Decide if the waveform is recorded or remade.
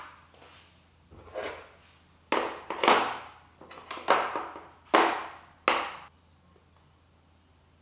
recorded